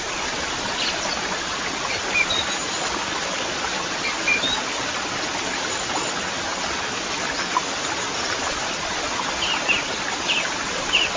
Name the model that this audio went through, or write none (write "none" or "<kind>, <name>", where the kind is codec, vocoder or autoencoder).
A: none